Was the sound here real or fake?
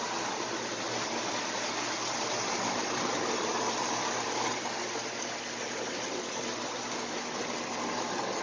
real